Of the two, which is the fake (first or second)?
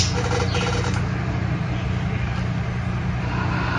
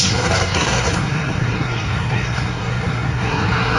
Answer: second